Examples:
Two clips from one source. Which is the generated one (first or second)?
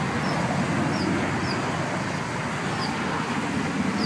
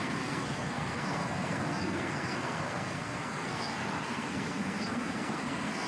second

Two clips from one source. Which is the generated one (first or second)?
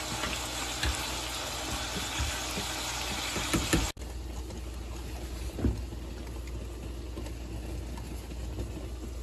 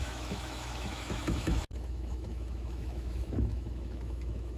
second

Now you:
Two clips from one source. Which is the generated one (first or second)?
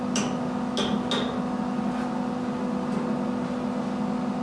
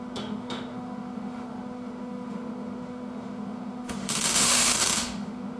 second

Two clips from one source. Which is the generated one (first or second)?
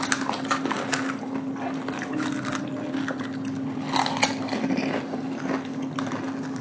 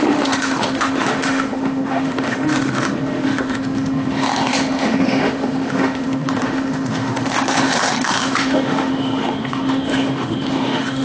second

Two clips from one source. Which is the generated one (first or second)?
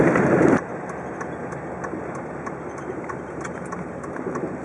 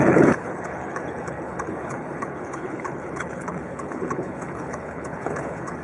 second